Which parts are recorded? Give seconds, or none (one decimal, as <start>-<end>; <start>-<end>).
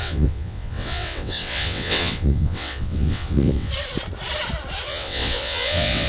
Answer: 3.7-4.9